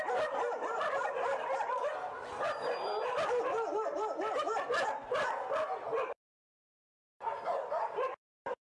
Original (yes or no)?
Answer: yes